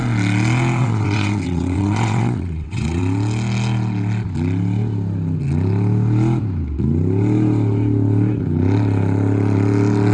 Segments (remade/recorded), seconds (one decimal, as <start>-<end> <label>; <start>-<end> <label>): 0.0-0.8 recorded; 0.8-3.0 remade; 3.0-10.1 recorded